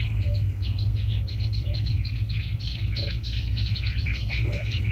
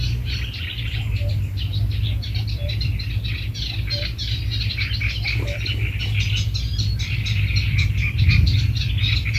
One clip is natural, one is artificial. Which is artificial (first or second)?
first